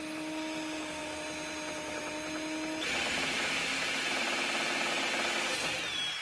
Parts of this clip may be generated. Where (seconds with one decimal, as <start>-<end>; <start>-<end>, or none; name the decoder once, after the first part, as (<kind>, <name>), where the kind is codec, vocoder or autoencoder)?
none